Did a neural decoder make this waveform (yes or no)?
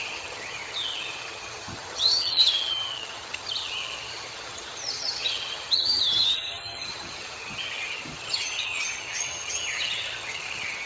yes